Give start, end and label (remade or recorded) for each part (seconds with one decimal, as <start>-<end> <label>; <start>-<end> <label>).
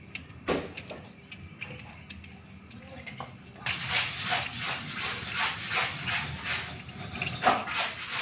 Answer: 0.0-8.2 recorded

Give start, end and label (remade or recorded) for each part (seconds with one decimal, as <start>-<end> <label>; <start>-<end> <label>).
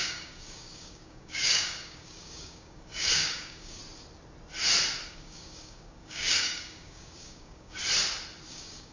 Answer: 0.0-3.8 remade; 3.8-5.1 recorded; 5.1-7.8 remade; 7.8-8.5 recorded; 8.5-8.9 remade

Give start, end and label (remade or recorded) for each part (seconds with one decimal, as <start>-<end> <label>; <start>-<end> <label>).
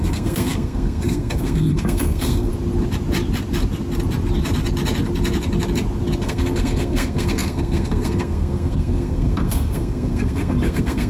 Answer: 0.0-2.5 remade; 2.5-6.2 recorded; 6.2-11.1 remade